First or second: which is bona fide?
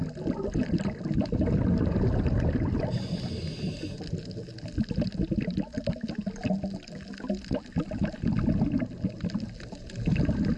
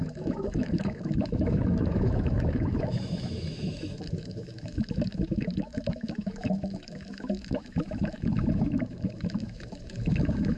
first